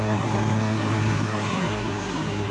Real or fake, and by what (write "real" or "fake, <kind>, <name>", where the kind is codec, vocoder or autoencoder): fake, codec, SNAC